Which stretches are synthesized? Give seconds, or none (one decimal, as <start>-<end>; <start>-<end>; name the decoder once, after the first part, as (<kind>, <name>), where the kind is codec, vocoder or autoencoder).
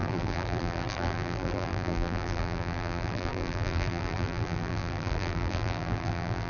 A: 0.0-6.5 (vocoder, BigVGAN v2)